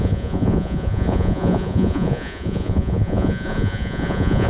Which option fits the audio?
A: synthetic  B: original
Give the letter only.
A